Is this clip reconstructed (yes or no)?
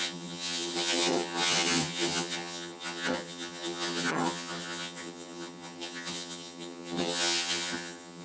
yes